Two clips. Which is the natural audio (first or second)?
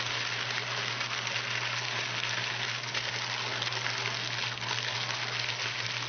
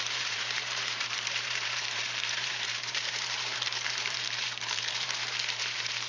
first